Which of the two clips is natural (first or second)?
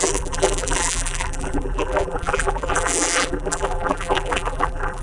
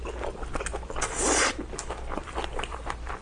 second